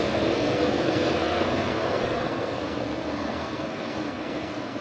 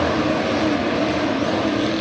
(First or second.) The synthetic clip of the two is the first